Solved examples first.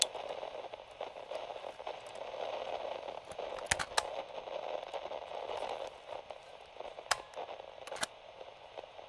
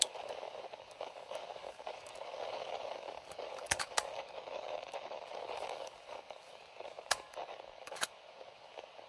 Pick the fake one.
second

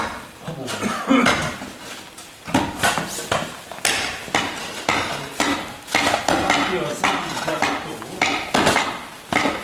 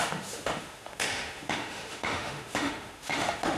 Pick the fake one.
second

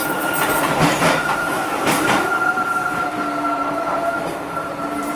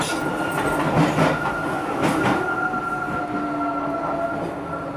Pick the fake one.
first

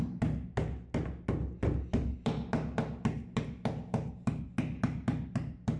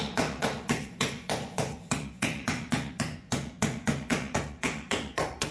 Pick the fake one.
second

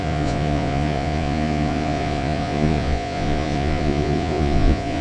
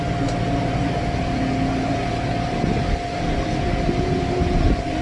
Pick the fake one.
first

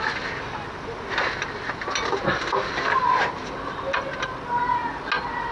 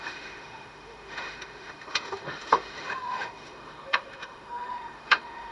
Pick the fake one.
second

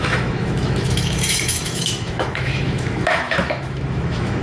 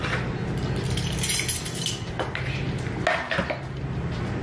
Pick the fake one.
first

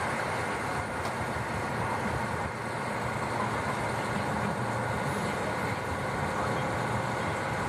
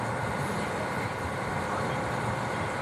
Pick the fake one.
second